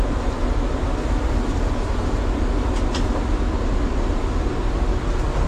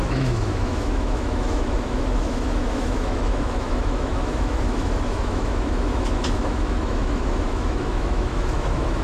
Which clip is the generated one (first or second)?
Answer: second